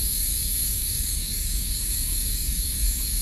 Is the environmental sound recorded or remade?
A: remade